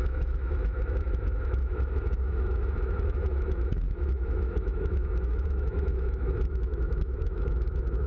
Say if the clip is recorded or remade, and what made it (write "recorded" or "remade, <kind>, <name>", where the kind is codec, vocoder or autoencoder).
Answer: remade, autoencoder, DAC-VAE